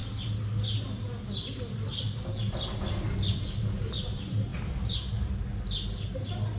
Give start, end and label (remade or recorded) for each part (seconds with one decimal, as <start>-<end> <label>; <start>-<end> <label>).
0.0-6.6 recorded